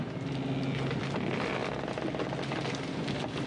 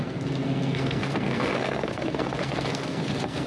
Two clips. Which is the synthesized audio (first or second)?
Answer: second